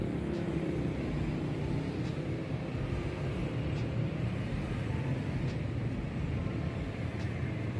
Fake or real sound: real